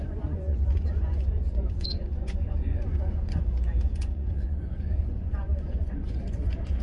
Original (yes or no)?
no